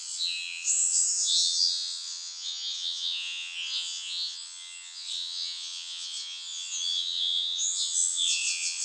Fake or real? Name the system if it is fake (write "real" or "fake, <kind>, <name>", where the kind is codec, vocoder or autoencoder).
fake, vocoder, WaveNeXt